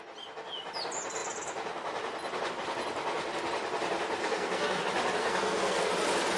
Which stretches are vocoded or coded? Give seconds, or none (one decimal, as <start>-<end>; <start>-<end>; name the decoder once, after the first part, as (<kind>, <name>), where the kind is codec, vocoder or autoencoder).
4.2-4.8 (codec, SNAC); 5.2-5.9